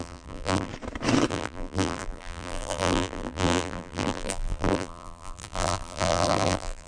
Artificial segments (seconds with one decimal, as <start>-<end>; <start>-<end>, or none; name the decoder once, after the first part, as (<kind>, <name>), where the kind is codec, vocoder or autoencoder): 0.0-0.7 (vocoder, BigVGAN v2); 1.3-6.9